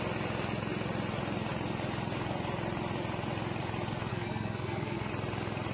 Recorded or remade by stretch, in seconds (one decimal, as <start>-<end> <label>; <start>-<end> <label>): 0.0-4.1 recorded; 4.1-5.1 remade; 5.1-5.7 recorded